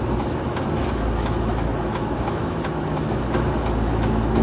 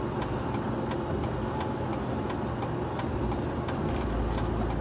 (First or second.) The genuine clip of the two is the second